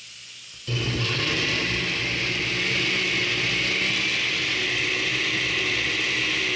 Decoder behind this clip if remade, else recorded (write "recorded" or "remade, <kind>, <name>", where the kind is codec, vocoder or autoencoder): recorded